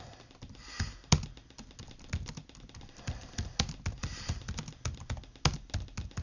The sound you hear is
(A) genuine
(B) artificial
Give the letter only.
A